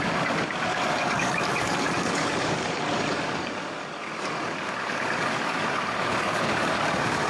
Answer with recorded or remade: remade